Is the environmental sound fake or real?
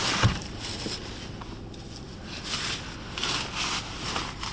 real